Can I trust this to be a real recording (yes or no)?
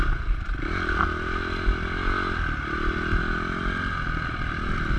yes